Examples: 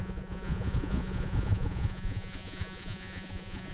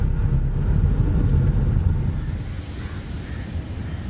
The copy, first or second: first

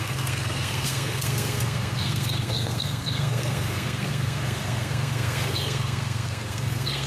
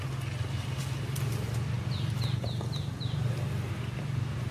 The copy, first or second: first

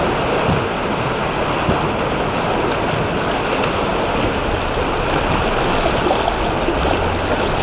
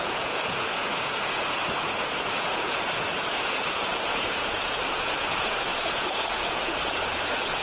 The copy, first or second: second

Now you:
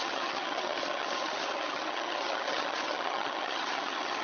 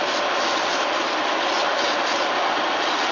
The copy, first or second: first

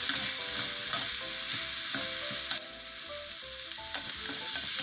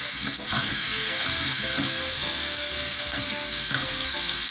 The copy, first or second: second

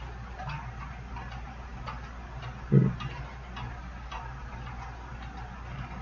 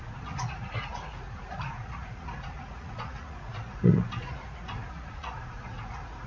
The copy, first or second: second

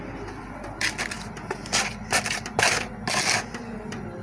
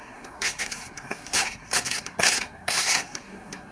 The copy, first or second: second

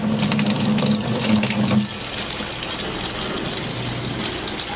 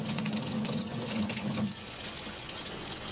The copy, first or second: second